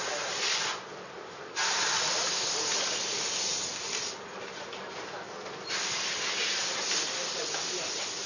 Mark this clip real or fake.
real